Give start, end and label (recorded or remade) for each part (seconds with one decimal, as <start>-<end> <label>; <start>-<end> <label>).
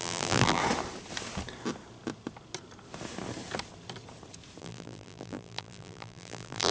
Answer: 0.0-0.6 remade; 0.6-4.6 recorded; 4.6-6.7 remade